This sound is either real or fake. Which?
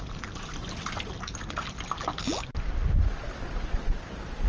real